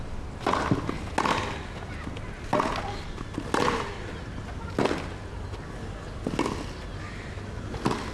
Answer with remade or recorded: recorded